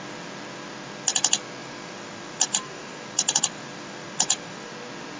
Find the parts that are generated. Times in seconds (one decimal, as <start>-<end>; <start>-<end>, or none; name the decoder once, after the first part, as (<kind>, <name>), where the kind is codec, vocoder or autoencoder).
1.6-4.7 (vocoder, BigVGAN v2)